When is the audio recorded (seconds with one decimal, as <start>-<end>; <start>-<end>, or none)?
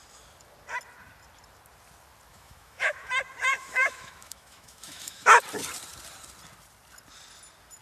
0.0-2.3; 3.1-3.5; 5.4-7.8